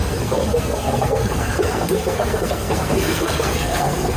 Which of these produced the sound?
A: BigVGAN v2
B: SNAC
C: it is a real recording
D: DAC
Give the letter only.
B